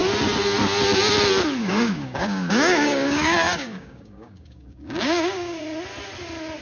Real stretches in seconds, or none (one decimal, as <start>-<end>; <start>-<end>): 0.0-1.6; 5.6-6.6